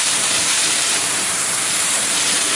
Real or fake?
fake